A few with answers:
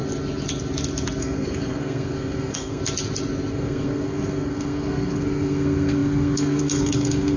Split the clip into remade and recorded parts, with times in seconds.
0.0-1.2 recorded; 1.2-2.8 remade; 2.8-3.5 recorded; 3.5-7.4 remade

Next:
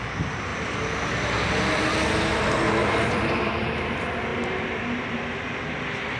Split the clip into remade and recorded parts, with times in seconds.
0.0-0.5 recorded; 0.5-1.5 remade; 1.5-2.8 recorded; 2.8-3.5 remade; 3.5-4.3 recorded; 4.3-5.2 remade; 5.2-6.2 recorded

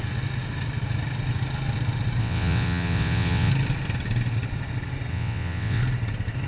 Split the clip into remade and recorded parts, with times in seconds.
0.0-2.2 recorded; 2.2-3.5 remade; 3.5-5.1 recorded; 5.1-5.8 remade; 5.8-6.5 recorded